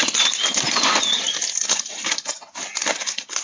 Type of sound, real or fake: real